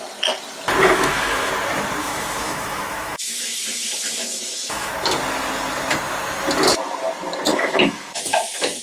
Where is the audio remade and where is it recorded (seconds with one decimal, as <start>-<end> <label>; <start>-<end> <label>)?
0.0-0.8 recorded; 0.8-1.5 remade; 1.5-2.0 recorded; 2.0-4.9 remade; 4.9-7.5 recorded; 7.5-8.8 remade